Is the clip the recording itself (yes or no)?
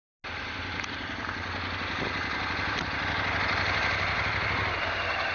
yes